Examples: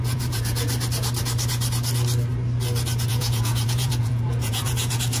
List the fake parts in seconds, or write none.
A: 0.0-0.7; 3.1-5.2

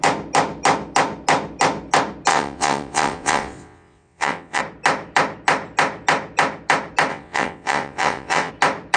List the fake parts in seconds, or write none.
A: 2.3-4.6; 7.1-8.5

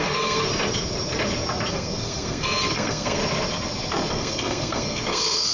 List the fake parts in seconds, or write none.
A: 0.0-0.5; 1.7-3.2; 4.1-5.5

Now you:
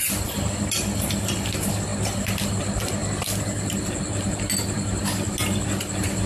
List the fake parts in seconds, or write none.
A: none